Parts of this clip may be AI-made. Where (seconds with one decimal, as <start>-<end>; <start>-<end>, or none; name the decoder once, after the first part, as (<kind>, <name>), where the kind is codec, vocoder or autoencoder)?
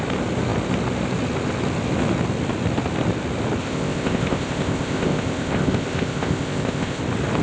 3.6-7.0 (codec, ZipCodec)